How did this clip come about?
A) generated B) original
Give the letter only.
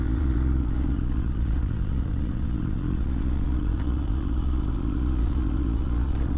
A